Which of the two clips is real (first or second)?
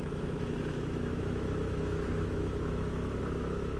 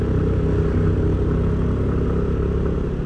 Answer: second